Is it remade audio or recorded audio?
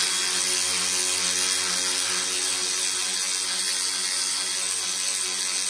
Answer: recorded